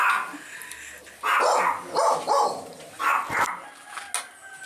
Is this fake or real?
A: real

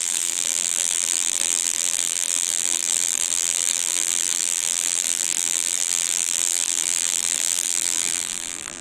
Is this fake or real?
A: fake